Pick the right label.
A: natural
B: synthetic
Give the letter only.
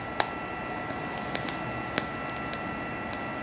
A